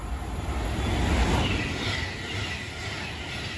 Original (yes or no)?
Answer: yes